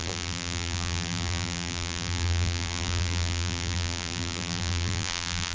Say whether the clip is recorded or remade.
remade